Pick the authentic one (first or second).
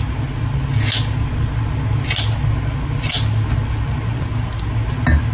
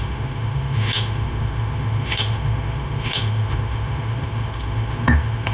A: first